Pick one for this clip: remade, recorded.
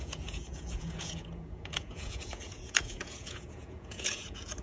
remade